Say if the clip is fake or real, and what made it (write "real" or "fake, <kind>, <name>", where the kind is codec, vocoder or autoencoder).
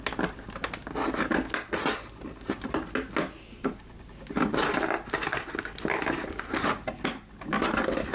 real